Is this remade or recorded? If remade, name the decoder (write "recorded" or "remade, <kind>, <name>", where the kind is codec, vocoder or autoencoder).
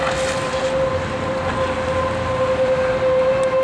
recorded